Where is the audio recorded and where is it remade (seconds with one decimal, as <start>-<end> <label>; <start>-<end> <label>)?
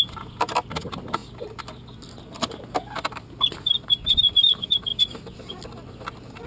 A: 0.0-6.5 recorded